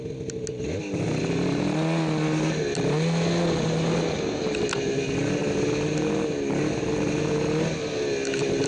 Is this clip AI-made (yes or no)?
no